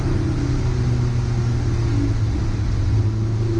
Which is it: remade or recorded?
recorded